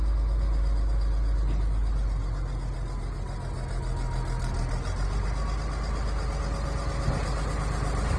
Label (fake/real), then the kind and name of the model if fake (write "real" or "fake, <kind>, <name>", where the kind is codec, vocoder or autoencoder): real